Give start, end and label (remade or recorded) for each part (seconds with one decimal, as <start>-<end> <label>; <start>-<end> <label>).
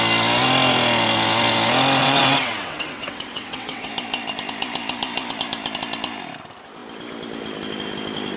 0.0-2.0 recorded; 2.0-3.9 remade; 3.9-8.4 recorded